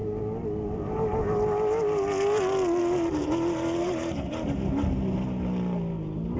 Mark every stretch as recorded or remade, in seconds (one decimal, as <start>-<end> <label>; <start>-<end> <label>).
0.0-3.8 recorded; 3.8-4.3 remade; 4.3-6.4 recorded